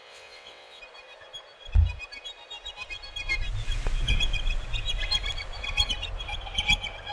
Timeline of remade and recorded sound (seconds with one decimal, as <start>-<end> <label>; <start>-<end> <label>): 0.0-0.8 remade; 0.8-7.1 recorded